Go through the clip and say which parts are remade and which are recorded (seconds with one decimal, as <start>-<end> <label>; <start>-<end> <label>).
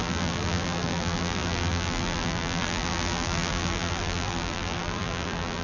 0.0-5.6 remade